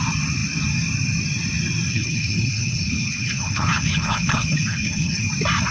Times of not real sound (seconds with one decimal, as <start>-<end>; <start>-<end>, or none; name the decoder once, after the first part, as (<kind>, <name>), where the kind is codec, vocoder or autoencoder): 1.9-5.3 (codec, HILCodec)

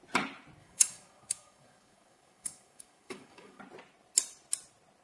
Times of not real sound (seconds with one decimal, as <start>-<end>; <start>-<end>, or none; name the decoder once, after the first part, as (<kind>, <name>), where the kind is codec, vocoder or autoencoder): 0.6-3.6 (codec, DAC)